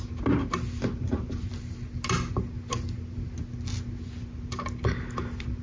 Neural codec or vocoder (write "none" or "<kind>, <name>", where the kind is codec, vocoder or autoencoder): none